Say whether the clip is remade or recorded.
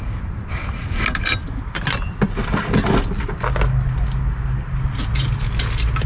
recorded